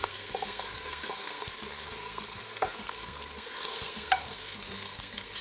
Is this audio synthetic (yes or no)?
yes